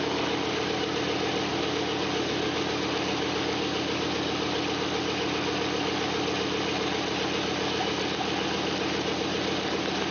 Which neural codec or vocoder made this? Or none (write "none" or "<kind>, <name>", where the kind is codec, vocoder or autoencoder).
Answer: none